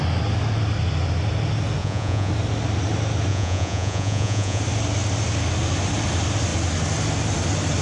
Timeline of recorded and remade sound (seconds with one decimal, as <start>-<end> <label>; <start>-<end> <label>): 0.0-1.8 recorded; 1.8-2.3 remade; 2.3-3.3 recorded; 3.3-4.6 remade; 4.6-7.8 recorded